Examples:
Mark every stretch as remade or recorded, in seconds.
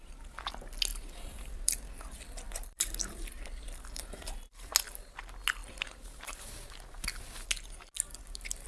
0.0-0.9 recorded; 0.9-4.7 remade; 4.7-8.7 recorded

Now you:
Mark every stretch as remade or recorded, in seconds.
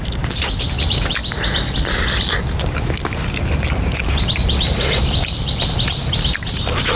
0.0-1.2 remade; 1.2-4.0 recorded; 4.0-7.0 remade